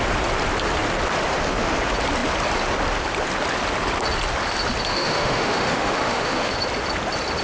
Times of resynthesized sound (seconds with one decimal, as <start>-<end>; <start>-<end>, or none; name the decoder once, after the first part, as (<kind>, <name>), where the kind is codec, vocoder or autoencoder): 4.9-6.5 (autoencoder, DAC-VAE)